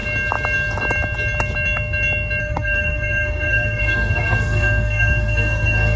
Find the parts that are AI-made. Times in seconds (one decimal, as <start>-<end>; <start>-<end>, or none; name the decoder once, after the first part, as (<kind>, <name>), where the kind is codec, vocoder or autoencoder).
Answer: 2.4-6.0 (codec, SNAC)